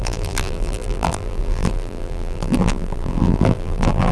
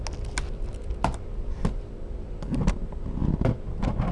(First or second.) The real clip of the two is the second